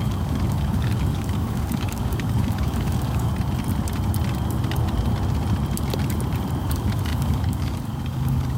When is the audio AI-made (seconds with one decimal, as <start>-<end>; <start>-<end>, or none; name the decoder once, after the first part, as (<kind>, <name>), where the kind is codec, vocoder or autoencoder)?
0.0-3.3 (codec, DAC); 6.6-8.6